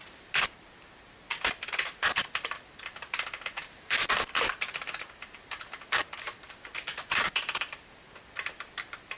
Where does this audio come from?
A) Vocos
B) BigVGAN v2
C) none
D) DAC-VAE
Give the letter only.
B